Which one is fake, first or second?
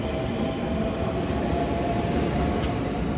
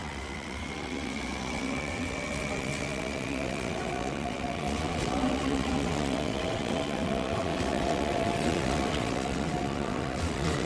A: second